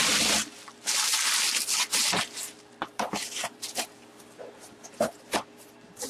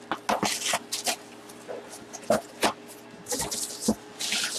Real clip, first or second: second